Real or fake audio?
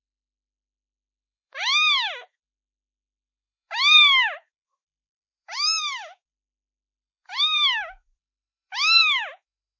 fake